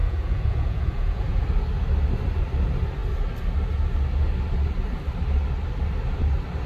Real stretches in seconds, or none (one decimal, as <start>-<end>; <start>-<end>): 1.4-6.7

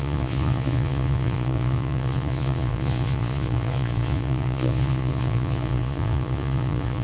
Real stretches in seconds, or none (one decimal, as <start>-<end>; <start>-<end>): none

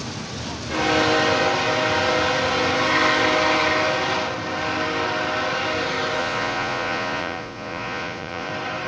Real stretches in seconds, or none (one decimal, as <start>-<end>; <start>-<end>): 0.0-6.2; 8.5-8.9

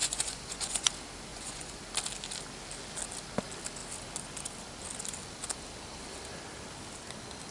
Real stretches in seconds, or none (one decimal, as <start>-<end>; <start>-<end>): 0.9-1.3; 1.8-7.5

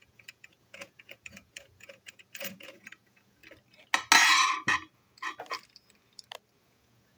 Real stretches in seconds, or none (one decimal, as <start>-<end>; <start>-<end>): 3.4-6.6

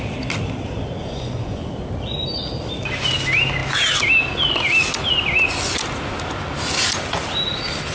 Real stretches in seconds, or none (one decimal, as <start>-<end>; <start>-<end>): 0.0-1.0; 1.7-7.9

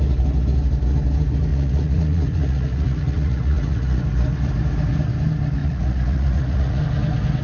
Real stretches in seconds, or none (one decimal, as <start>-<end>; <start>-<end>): 0.0-1.5; 4.0-5.6; 6.8-7.4